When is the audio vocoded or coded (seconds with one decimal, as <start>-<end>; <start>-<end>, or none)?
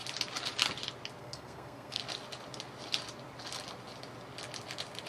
1.2-2.0